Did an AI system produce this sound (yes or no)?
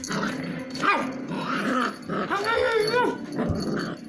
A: no